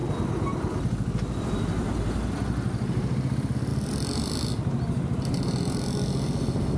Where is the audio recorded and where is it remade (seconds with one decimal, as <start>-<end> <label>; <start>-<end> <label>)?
0.0-6.8 recorded